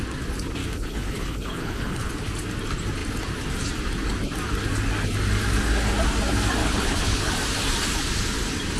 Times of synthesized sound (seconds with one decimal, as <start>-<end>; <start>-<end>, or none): 0.6-2.1; 6.6-7.3